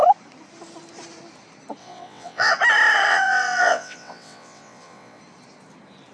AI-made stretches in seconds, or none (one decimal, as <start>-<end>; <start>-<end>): 1.8-2.5; 3.1-5.2